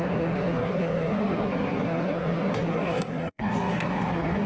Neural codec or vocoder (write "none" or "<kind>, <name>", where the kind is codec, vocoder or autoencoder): codec, SNAC